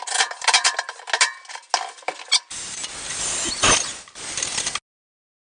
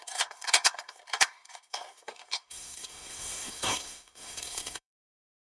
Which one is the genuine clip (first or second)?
first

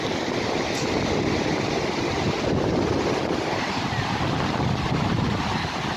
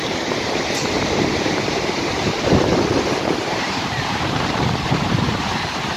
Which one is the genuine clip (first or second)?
first